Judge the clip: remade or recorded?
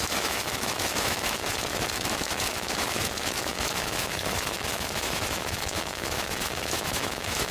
remade